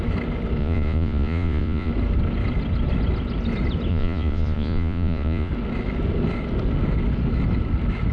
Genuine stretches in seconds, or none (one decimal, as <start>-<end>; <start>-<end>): 0.0-0.6; 1.9-3.9; 5.5-8.1